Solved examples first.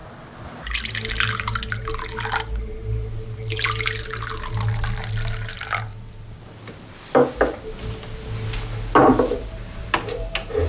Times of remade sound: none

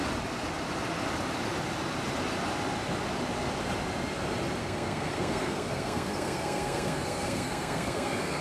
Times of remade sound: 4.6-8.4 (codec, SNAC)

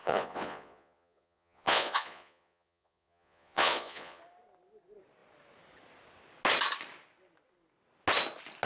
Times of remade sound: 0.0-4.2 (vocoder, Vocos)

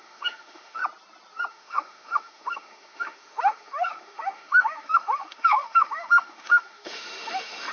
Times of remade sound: 0.0-0.8 (autoencoder, DAC-VAE); 1.5-7.7

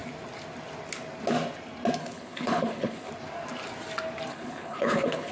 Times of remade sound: 2.0-3.1 (codec, HILCodec); 4.3-5.3